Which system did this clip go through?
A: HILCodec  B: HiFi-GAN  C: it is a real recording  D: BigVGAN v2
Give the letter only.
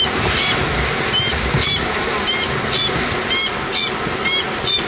C